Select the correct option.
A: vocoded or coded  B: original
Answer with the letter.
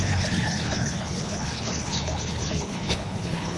A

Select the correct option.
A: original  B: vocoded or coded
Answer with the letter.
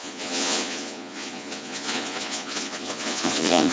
B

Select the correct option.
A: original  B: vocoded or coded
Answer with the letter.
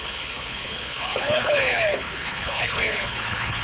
B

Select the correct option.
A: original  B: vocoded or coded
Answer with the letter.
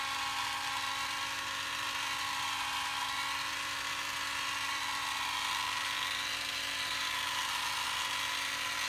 A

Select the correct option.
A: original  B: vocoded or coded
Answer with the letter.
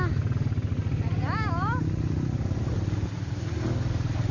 A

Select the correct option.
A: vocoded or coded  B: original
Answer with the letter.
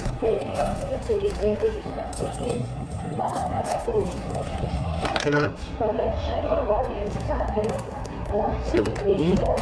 A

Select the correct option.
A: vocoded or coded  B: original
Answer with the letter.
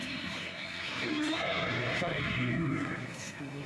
A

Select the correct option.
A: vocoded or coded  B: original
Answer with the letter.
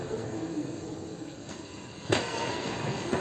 A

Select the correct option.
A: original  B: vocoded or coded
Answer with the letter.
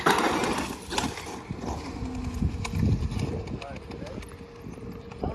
A